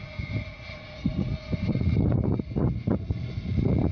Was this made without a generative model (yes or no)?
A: no